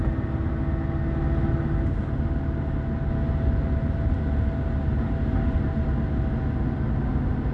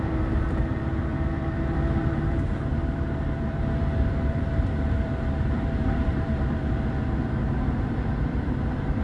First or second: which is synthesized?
second